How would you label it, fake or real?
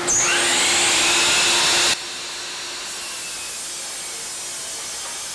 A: real